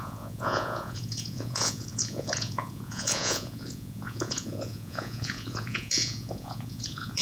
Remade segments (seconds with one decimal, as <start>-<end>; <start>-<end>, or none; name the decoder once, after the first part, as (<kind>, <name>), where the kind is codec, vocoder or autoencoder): 0.0-7.2 (vocoder, Vocos)

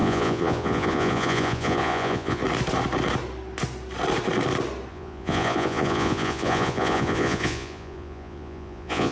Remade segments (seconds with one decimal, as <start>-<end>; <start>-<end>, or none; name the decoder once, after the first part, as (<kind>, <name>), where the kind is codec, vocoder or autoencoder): 0.0-2.4 (vocoder, Vocos); 4.9-9.1

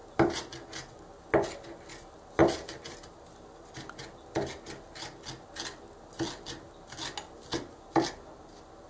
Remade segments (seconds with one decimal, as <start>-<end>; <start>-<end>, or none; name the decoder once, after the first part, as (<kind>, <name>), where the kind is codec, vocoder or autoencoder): none

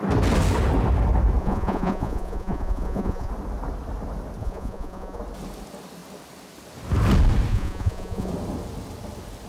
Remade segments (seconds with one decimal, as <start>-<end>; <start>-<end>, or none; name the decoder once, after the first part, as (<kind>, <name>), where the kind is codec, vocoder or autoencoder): 1.4-3.3 (vocoder, Vocos); 4.4-5.2; 7.5-8.3

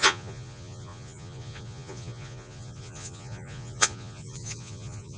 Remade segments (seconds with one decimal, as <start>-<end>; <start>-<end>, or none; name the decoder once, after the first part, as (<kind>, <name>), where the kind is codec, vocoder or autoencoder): 0.0-5.2 (vocoder, Vocos)

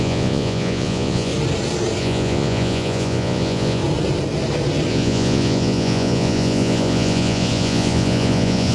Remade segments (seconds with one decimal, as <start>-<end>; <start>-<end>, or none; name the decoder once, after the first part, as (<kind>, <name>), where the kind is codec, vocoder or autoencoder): 0.0-1.3 (vocoder, Vocos); 2.0-3.8; 4.9-8.7

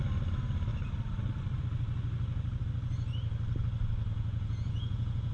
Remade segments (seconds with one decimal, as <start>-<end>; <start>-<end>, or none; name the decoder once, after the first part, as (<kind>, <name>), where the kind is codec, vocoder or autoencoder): 4.1-5.3 (vocoder, Vocos)

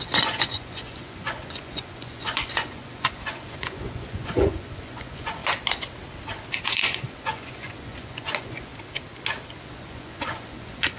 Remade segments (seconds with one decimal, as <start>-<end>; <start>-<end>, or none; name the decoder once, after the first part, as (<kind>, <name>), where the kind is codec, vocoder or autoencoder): 0.0-5.4 (vocoder, Vocos); 6.6-8.7; 9.6-11.0